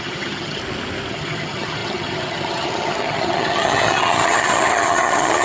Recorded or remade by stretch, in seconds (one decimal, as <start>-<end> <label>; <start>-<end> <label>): 0.0-0.6 remade; 0.6-1.1 recorded; 1.1-5.4 remade